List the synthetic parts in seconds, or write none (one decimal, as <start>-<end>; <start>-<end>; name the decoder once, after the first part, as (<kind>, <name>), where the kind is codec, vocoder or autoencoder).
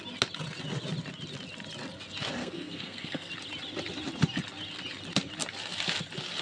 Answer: 2.4-3.3 (codec, SNAC)